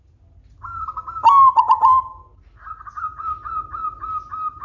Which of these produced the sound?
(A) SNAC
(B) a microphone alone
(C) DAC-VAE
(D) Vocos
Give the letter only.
B